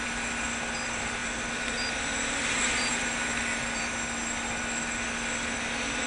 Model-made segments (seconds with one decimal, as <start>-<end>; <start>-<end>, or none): 0.0-1.2; 3.4-6.1